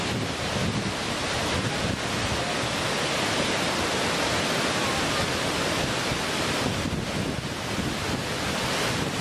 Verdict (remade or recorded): recorded